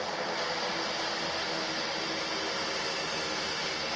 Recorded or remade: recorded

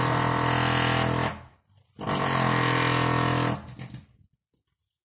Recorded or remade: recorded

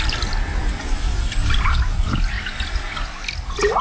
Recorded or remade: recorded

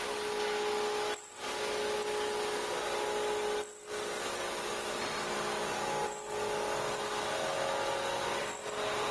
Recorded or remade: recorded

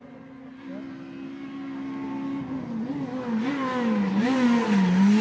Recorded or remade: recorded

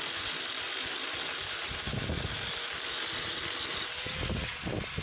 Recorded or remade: recorded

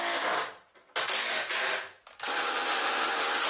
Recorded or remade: recorded